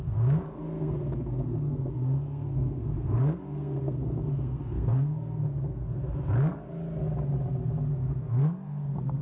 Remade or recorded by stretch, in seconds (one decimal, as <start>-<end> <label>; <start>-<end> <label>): 0.0-6.0 remade; 6.0-7.9 recorded; 7.9-9.2 remade